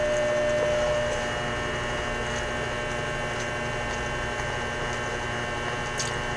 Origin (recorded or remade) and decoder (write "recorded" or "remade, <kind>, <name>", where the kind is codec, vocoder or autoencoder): recorded